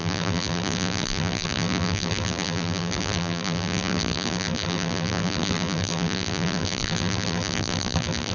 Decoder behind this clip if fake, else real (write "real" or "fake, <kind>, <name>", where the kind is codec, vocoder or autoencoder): fake, vocoder, BigVGAN v2